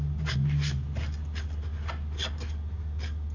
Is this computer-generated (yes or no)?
no